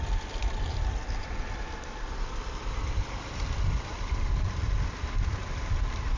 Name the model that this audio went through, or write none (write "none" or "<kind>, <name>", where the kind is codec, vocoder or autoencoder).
none